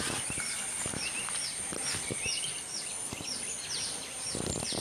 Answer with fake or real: real